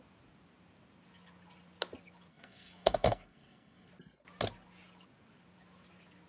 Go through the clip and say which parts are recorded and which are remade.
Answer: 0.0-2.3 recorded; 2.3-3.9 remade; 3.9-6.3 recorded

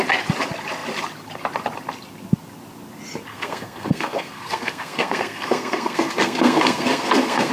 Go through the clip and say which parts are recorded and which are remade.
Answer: 0.0-3.3 recorded; 3.3-7.5 remade